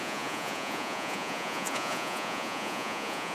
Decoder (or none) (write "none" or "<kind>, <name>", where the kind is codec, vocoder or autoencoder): vocoder, Vocos